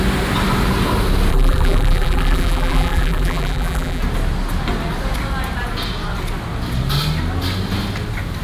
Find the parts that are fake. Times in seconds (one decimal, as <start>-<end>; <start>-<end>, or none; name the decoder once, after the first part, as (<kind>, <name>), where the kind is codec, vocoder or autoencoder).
1.3-4.0 (vocoder, BigVGAN v2)